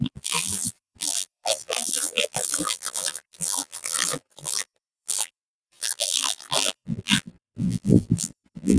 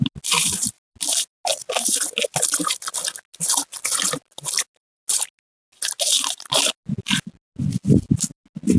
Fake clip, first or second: first